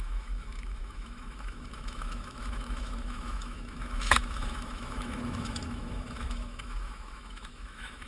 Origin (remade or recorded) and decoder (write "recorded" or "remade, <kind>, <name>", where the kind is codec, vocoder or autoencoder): remade, autoencoder, DAC-VAE